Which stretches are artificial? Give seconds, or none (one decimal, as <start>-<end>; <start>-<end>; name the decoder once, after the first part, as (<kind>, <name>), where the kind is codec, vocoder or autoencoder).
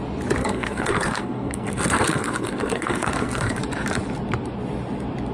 0.4-3.6 (codec, SNAC)